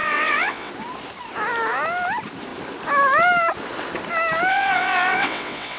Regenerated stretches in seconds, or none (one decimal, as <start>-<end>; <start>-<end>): 0.0-0.7; 4.5-5.8